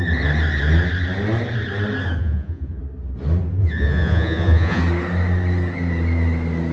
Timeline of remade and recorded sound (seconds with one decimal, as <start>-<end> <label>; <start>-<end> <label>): 0.0-2.2 recorded; 2.2-2.8 remade; 2.8-3.6 recorded; 3.6-4.8 remade; 4.8-6.7 recorded